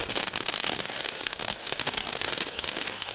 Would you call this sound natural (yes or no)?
no